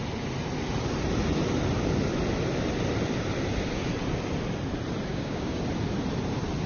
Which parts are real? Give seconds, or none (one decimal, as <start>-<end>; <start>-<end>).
0.0-5.1; 5.6-6.7